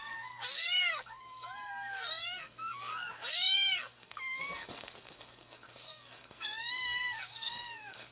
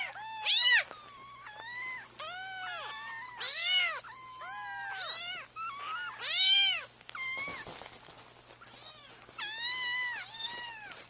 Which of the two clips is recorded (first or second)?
second